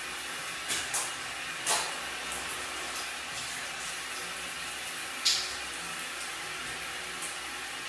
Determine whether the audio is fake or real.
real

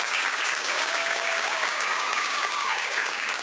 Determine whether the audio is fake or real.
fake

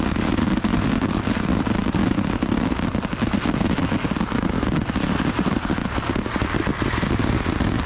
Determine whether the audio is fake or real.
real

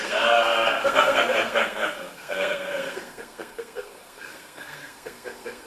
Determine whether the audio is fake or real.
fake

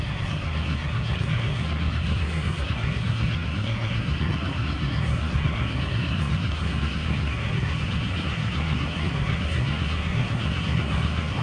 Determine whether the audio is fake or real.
fake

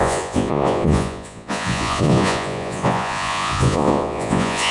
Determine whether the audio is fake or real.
fake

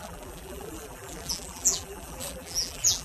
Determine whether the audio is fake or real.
fake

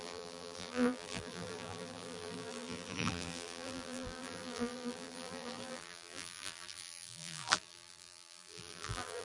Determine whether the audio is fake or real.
fake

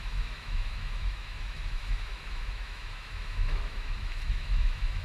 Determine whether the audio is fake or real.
fake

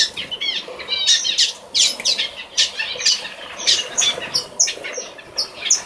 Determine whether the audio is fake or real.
real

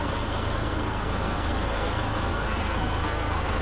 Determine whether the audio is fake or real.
fake